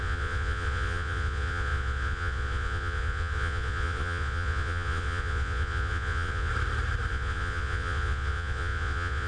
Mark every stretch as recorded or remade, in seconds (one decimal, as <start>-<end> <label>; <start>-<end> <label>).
0.0-6.5 remade; 6.5-7.1 recorded; 7.1-9.3 remade